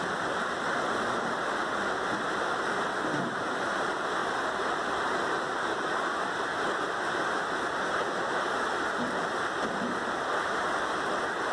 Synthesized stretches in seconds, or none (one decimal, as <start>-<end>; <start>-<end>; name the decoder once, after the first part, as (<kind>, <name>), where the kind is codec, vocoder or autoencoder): 4.2-5.1 (vocoder, BigVGAN v2)